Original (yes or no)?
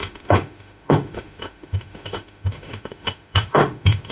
no